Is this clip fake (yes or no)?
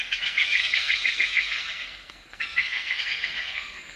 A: yes